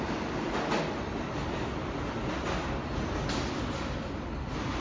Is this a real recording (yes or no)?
yes